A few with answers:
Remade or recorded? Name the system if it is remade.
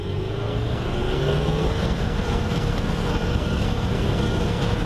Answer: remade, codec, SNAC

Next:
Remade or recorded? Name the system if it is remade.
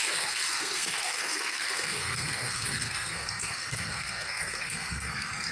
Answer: remade, codec, SNAC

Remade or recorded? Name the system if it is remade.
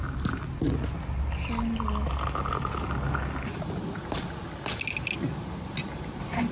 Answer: recorded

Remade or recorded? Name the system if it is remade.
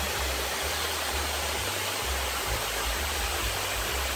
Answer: recorded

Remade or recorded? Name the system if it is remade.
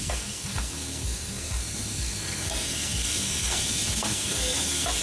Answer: remade, codec, SNAC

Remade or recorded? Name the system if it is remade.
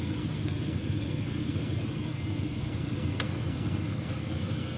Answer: remade, codec, SNAC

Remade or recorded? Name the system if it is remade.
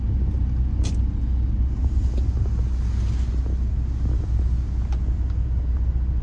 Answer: recorded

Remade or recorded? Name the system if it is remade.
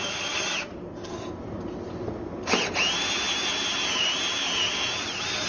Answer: recorded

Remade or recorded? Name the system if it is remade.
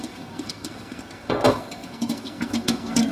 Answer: remade, codec, SNAC